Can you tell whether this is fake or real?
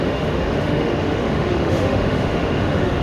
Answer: fake